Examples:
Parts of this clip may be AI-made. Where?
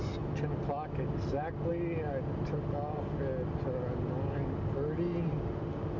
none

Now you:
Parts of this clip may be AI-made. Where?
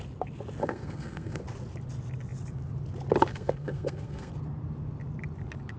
0.6-1.4; 3.3-4.3